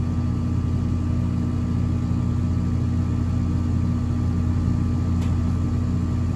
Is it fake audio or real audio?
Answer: real